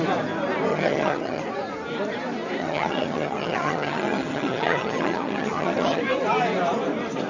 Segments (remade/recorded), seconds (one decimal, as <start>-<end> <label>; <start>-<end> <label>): 0.0-0.7 recorded; 0.7-1.4 remade; 1.4-2.6 recorded; 2.6-6.0 remade; 6.0-7.3 recorded